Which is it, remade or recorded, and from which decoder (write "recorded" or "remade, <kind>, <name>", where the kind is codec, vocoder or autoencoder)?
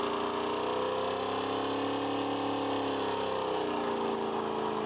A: recorded